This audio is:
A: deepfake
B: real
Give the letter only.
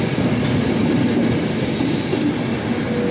B